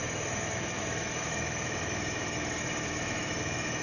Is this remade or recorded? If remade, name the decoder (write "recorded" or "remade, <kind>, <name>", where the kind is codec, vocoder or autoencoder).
remade, autoencoder, DAC-VAE